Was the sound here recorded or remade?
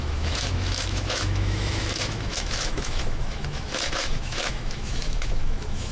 remade